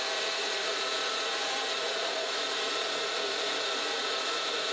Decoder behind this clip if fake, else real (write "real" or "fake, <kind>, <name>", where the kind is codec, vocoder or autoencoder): fake, vocoder, Vocos